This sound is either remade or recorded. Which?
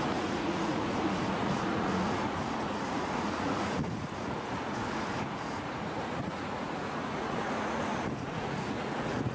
remade